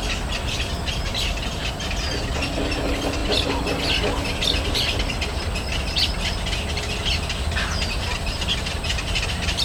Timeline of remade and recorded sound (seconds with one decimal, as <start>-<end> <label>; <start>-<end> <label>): 0.0-9.6 recorded